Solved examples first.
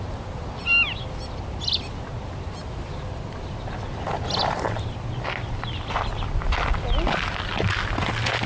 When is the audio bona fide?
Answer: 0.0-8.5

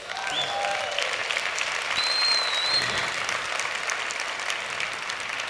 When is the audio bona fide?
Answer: 0.0-5.5